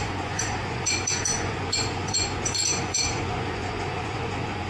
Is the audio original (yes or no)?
no